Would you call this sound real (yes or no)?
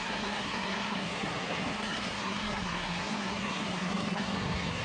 no